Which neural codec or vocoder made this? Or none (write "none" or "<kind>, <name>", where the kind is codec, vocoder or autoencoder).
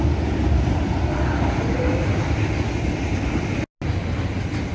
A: none